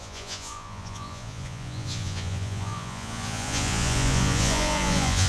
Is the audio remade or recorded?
remade